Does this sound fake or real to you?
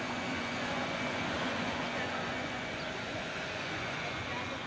fake